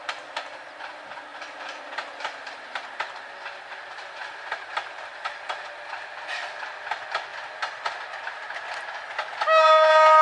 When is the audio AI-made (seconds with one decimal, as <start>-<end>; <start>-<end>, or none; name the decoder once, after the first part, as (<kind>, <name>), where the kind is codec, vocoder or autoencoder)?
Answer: 0.0-0.6 (vocoder, BigVGAN v2)